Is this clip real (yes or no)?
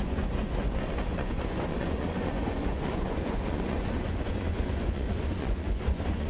no